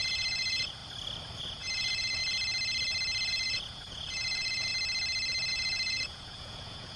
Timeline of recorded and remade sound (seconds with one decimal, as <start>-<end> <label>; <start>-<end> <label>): 0.0-0.8 remade; 0.8-1.4 recorded; 1.4-2.2 remade; 2.2-3.3 recorded; 3.3-4.7 remade; 4.7-5.5 recorded; 5.5-7.0 remade